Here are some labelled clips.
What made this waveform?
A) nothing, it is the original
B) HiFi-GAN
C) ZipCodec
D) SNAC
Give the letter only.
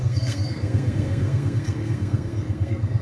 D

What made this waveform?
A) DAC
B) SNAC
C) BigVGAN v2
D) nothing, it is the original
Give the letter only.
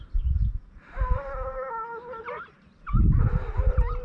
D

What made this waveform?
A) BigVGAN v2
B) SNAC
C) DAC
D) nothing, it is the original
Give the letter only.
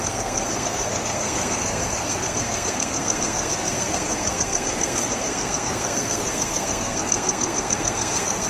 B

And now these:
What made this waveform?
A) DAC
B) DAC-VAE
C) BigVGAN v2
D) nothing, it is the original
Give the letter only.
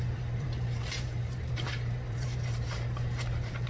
C